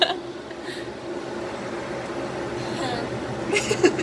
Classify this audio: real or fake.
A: real